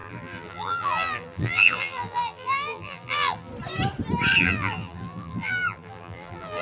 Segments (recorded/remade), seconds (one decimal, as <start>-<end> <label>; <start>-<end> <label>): 0.0-3.5 remade; 3.5-4.4 recorded; 4.4-6.6 remade